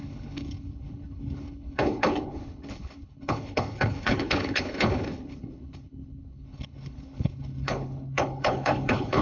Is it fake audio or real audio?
fake